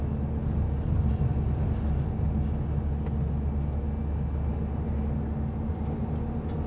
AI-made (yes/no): no